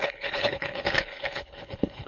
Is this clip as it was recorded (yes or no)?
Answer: no